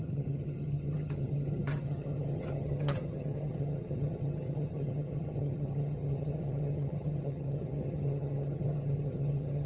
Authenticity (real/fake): fake